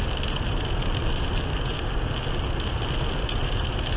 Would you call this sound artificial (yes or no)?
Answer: no